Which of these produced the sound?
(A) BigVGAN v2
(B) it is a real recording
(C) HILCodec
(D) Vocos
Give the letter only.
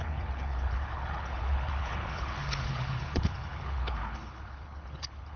C